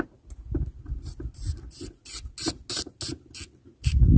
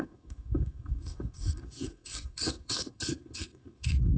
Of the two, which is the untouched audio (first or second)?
first